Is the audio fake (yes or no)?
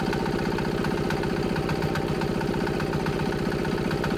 no